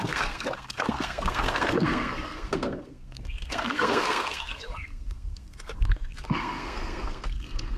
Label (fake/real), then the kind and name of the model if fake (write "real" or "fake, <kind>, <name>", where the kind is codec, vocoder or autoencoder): fake, codec, SNAC